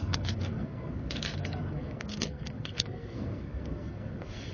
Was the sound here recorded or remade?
remade